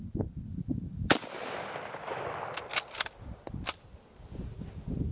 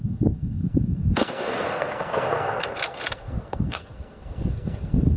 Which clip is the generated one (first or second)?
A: second